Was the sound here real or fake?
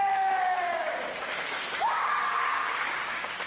fake